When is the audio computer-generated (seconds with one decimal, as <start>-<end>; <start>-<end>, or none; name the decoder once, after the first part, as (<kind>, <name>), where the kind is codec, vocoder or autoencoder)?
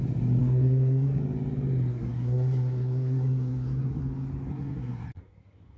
0.4-1.2 (codec, SNAC); 1.9-4.0; 4.5-5.8